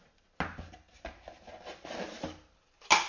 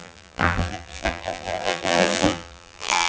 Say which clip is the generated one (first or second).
second